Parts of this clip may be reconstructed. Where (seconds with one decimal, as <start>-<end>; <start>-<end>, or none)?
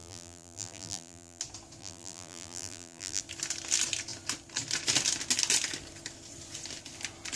0.0-1.4; 1.8-3.2